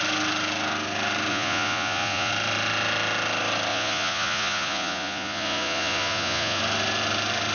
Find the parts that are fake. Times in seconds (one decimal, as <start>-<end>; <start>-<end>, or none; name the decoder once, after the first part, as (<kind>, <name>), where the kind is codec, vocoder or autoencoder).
1.3-2.3 (vocoder, Vocos); 3.7-6.6